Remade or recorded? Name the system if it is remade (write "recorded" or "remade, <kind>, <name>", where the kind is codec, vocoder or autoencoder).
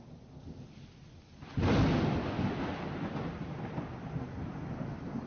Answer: recorded